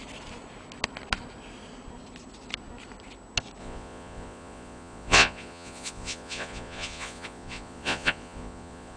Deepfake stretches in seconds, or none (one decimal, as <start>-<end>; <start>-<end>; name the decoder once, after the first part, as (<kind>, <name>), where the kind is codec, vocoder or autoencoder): 3.6-9.0 (vocoder, Vocos)